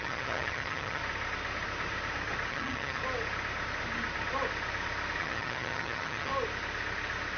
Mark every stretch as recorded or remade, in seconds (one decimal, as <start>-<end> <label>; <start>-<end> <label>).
0.0-1.0 remade; 1.0-2.5 recorded; 2.5-3.0 remade; 3.0-5.2 recorded; 5.2-6.3 remade; 6.3-7.4 recorded